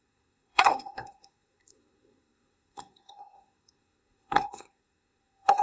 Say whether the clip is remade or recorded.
remade